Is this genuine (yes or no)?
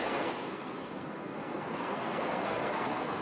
no